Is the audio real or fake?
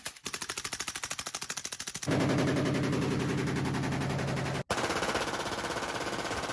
real